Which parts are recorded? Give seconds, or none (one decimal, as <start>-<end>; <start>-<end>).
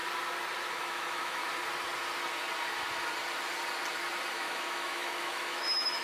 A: 0.0-0.7; 1.4-4.3